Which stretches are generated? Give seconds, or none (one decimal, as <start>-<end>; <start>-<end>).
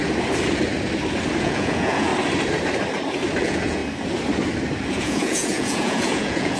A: 1.4-2.1; 3.4-3.8; 4.9-6.6